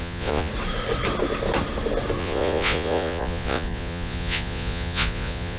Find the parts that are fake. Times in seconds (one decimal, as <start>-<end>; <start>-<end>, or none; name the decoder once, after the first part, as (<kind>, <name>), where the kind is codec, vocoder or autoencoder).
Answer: 0.0-0.5 (vocoder, Vocos); 2.2-5.6